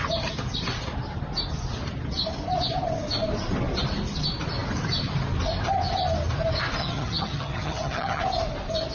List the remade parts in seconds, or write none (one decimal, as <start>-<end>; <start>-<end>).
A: 6.8-8.2